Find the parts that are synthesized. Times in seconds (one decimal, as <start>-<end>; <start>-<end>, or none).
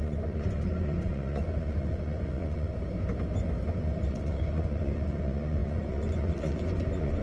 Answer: 0.0-2.7; 3.6-7.2